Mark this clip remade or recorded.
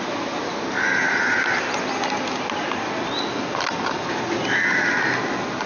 recorded